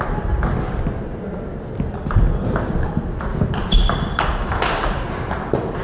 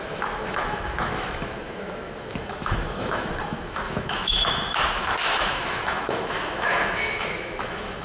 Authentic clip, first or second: first